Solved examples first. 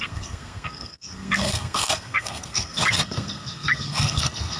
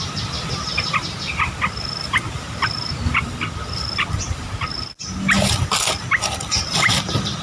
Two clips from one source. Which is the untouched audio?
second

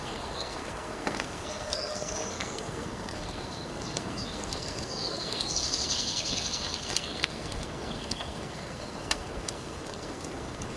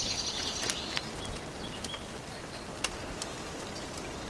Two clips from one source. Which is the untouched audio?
second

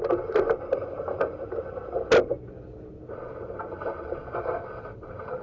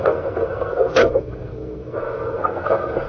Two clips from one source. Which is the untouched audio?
first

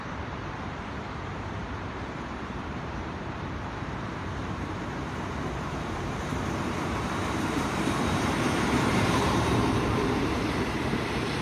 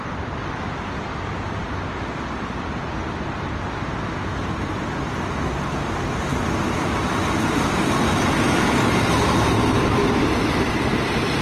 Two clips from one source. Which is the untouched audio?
second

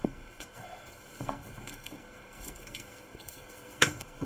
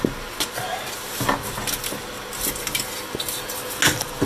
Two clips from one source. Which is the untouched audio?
second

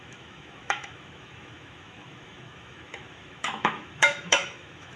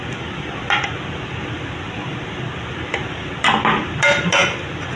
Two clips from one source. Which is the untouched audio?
second